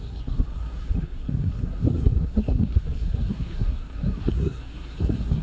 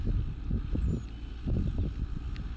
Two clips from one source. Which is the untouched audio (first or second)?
second